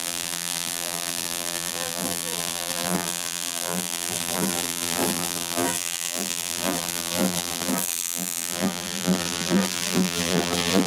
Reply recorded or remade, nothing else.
remade